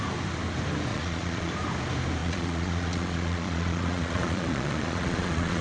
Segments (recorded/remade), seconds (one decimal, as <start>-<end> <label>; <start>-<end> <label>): 0.0-0.9 recorded; 0.9-1.5 remade; 1.5-2.2 recorded; 2.2-5.6 remade